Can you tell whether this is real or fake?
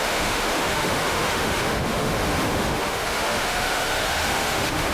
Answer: fake